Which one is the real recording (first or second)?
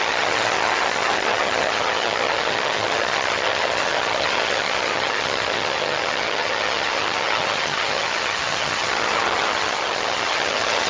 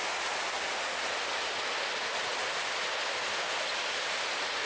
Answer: second